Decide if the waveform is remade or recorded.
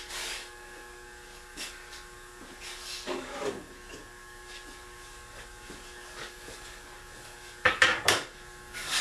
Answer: remade